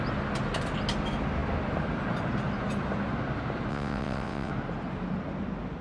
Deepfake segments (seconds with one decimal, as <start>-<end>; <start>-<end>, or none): 3.7-4.5